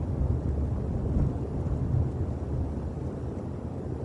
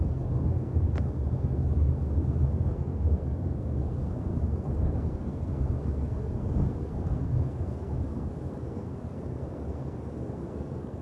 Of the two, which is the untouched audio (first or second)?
first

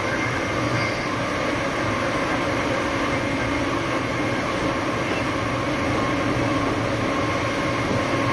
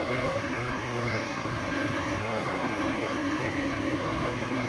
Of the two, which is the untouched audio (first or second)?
first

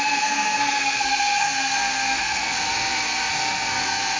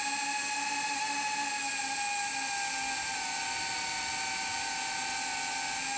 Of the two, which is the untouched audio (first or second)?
second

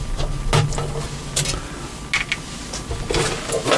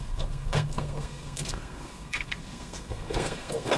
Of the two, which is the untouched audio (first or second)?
first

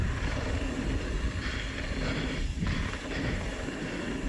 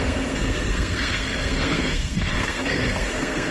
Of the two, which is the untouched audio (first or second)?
first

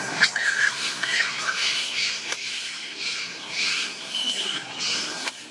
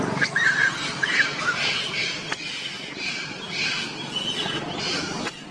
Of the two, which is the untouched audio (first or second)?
second